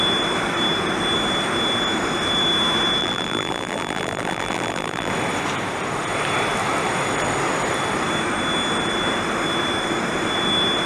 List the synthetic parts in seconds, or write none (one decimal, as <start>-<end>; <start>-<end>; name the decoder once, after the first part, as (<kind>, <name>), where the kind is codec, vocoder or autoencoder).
3.0-5.1 (vocoder, BigVGAN v2)